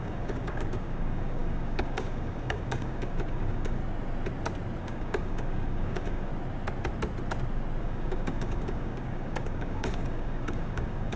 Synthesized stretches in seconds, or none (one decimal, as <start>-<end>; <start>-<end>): 0.0-3.8; 4.8-6.3; 7.8-11.2